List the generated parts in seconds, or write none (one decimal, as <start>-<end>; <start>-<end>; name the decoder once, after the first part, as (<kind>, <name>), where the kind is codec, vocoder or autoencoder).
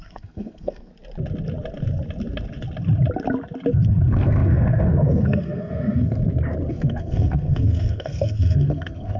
0.0-0.9 (codec, SNAC); 3.7-6.2; 6.7-9.2